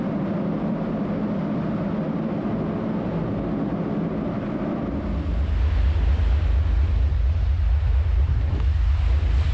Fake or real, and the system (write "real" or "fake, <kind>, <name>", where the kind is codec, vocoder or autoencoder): real